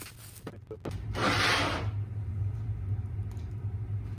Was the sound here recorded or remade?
recorded